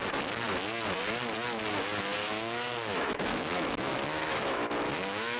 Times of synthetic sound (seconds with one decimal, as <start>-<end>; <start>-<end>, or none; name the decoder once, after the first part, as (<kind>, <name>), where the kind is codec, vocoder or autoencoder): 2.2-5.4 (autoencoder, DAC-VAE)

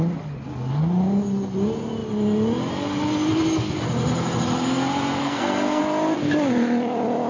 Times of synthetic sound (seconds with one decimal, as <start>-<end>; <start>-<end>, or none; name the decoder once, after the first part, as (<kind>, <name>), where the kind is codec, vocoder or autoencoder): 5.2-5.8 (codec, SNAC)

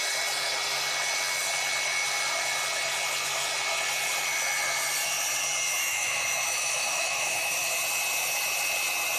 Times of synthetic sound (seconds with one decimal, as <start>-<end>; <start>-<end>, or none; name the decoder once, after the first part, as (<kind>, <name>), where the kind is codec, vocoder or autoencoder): 5.8-7.7 (autoencoder, DAC-VAE)